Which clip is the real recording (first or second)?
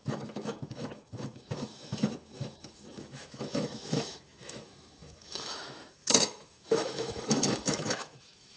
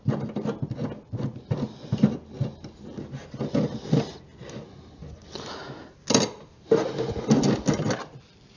second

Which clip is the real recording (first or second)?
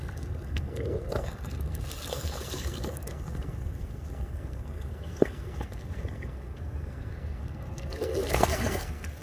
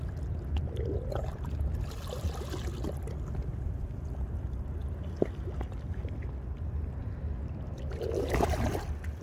second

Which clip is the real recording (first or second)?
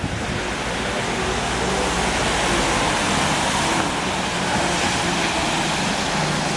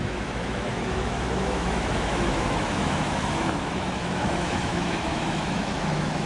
first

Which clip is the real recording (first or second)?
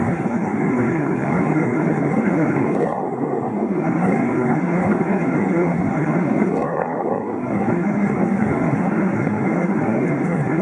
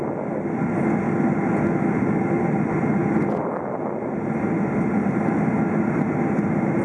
second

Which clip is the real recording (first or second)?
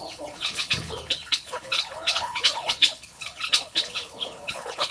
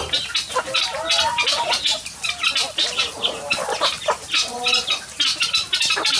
second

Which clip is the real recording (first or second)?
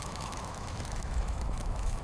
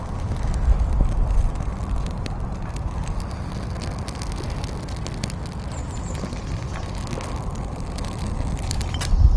second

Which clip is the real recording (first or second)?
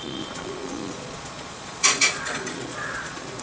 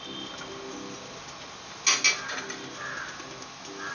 second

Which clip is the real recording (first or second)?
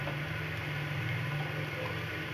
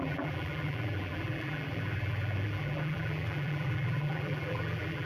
first